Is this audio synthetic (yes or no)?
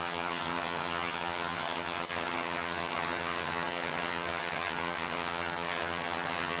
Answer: yes